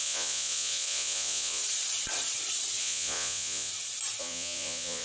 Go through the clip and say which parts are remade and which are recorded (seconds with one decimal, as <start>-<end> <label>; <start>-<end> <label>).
0.0-1.6 remade; 1.6-2.8 recorded; 2.8-3.7 remade; 3.7-4.2 recorded; 4.2-5.0 remade